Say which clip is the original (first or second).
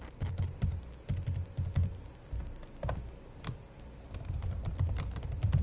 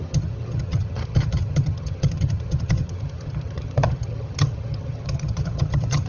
first